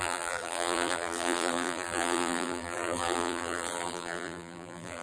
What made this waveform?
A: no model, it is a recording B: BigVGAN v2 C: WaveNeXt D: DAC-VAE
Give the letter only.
B